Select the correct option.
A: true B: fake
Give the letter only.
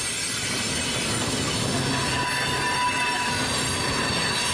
A